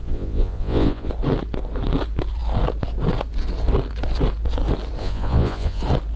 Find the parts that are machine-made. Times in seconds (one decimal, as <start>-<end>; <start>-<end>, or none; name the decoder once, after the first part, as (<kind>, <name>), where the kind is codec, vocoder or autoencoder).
0.0-1.1 (vocoder, Vocos); 5.0-5.8